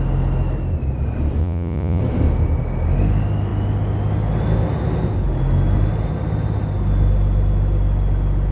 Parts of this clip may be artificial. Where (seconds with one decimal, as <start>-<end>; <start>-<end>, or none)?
1.4-2.0